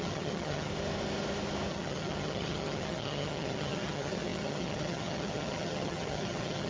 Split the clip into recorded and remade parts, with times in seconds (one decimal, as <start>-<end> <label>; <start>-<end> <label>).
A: 0.0-0.7 remade; 0.7-1.7 recorded; 1.7-6.7 remade